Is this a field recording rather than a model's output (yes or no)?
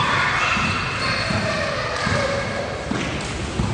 no